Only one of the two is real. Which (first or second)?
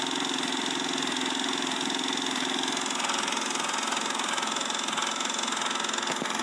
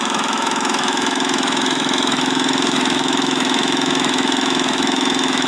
first